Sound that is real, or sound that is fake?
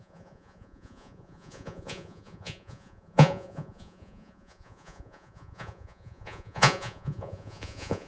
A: fake